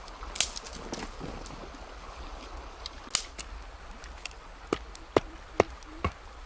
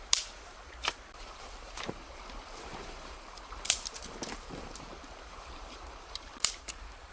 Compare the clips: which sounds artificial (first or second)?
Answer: second